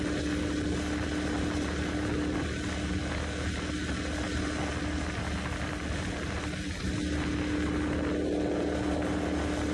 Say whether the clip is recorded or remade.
recorded